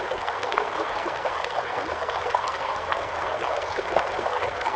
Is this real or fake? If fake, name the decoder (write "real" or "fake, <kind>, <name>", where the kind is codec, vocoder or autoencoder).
fake, codec, SNAC